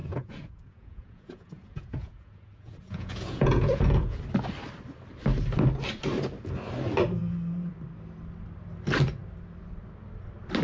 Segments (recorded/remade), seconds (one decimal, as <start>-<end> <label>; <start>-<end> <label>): 0.0-4.2 remade; 4.2-10.6 recorded